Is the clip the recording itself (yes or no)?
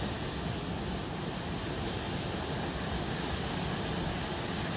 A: yes